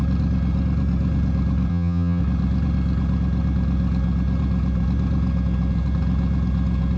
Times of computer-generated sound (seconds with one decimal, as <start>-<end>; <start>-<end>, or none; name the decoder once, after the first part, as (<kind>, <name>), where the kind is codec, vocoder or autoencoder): 1.7-2.2 (vocoder, HiFi-GAN)